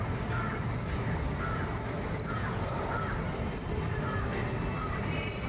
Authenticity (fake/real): real